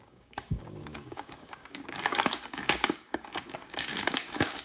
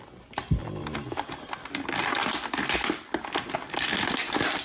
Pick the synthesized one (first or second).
first